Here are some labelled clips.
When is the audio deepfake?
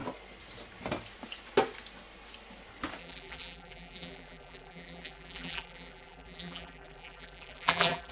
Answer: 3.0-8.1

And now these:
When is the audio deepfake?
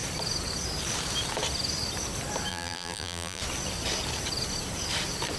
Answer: 2.5-3.4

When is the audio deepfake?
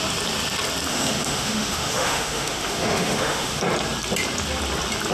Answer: 0.9-3.6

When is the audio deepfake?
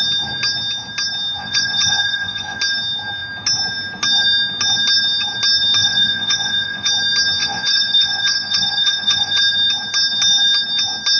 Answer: 1.4-2.6; 5.8-6.9; 7.4-9.4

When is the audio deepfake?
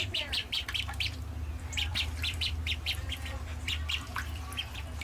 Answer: 0.0-5.0